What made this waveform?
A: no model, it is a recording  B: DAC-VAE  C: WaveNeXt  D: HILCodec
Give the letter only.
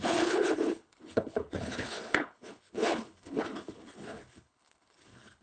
D